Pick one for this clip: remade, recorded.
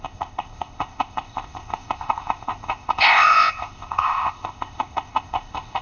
remade